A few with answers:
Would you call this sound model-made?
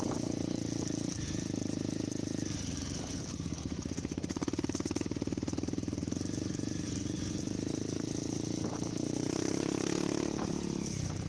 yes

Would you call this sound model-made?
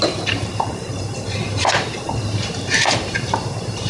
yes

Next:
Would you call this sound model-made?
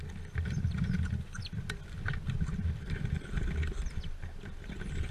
no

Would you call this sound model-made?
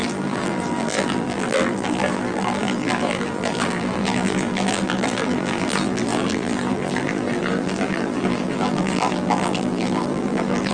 yes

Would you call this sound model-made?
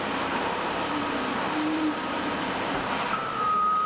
yes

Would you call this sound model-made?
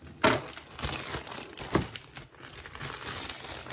no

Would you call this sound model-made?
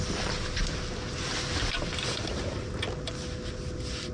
no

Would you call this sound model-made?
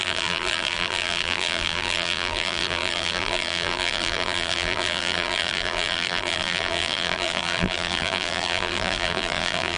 yes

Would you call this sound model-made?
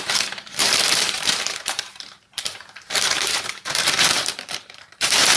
yes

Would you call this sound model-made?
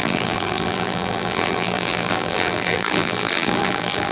yes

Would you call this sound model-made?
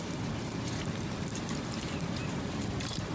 yes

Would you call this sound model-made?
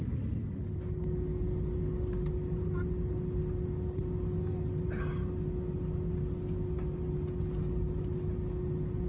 no